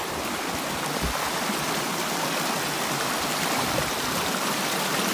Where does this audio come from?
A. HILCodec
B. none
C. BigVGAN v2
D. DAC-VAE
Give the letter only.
B